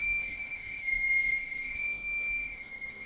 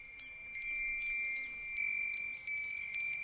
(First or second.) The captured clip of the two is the second